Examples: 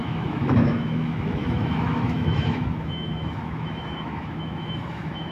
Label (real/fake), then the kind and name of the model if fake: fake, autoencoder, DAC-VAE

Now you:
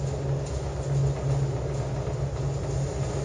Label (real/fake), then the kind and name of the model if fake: real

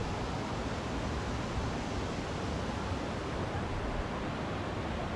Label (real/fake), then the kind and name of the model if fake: real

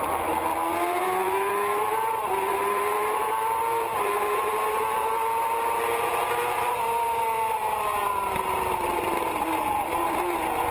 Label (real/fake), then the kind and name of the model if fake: fake, vocoder, BigVGAN v2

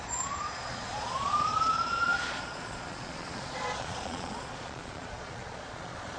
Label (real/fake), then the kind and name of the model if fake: fake, vocoder, Vocos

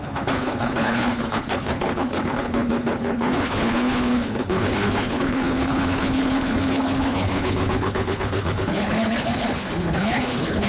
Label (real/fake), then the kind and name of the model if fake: fake, codec, HILCodec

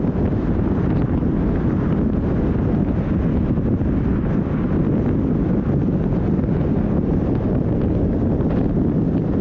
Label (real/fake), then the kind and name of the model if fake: real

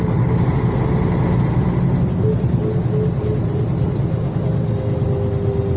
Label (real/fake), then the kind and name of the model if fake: real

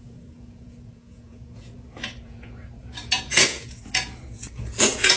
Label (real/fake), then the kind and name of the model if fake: fake, vocoder, Vocos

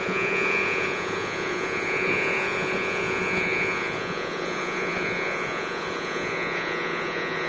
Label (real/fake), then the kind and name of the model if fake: fake, vocoder, Vocos